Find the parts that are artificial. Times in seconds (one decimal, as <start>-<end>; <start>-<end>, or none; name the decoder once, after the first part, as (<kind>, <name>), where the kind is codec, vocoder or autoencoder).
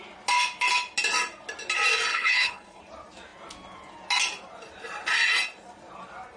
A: 2.1-2.8 (codec, HILCodec)